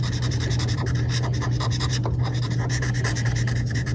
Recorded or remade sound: remade